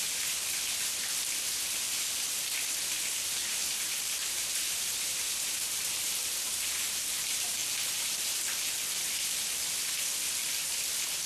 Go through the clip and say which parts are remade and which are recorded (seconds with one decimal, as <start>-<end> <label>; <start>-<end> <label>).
0.0-3.4 recorded; 3.4-7.0 remade; 7.0-7.6 recorded; 7.6-8.4 remade; 8.4-11.3 recorded